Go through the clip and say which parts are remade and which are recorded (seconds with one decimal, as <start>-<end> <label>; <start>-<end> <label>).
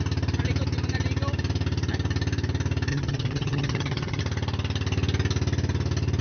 0.0-2.9 recorded; 2.9-4.2 remade; 4.2-6.2 recorded